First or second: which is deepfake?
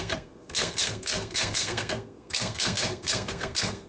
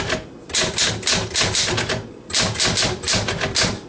first